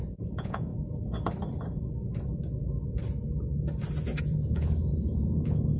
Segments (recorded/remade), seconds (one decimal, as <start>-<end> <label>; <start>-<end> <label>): 0.0-0.7 remade; 0.7-4.2 recorded; 4.2-5.8 remade